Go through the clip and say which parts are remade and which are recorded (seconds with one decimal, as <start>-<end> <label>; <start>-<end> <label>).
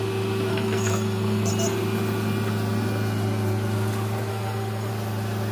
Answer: 0.0-0.5 recorded; 0.5-1.5 remade; 1.5-4.3 recorded; 4.3-4.9 remade; 4.9-5.5 recorded